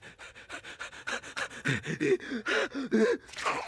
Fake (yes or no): yes